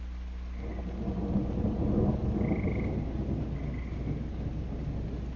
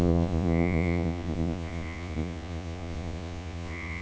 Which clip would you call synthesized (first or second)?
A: second